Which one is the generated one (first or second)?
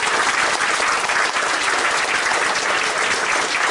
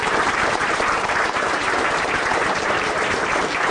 second